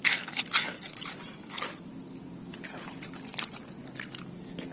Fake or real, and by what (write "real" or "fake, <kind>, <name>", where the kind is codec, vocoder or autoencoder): real